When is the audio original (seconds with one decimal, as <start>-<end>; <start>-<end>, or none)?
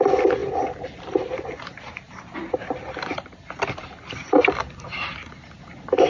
0.0-0.4; 3.4-6.1